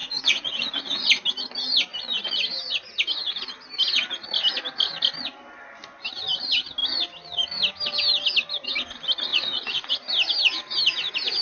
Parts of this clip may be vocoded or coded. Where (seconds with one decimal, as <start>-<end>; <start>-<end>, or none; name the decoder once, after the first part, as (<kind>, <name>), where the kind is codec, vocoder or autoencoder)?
0.0-1.1 (vocoder, Vocos); 9.3-9.9